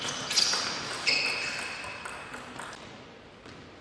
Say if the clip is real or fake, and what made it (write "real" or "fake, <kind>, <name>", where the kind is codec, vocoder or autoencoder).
real